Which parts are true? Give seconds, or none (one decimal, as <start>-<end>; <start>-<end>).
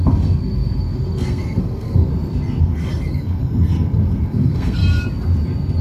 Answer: 2.1-2.6; 4.8-5.8